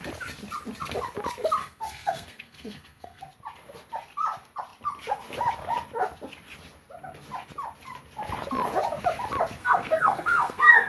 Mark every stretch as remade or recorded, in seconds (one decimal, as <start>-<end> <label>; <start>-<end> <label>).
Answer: 0.0-1.6 recorded; 1.6-3.2 remade; 3.2-9.6 recorded; 9.6-10.9 remade